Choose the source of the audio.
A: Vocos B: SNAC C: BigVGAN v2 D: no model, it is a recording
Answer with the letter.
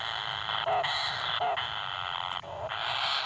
D